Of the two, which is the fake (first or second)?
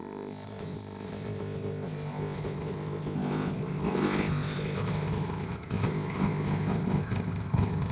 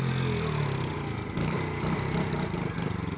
first